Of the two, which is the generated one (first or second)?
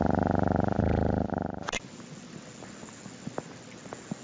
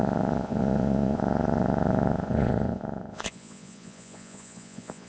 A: second